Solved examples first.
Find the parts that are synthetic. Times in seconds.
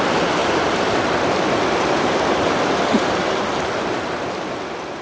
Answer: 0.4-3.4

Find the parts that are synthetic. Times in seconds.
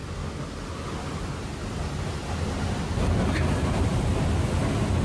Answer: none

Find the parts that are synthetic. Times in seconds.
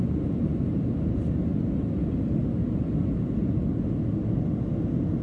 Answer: none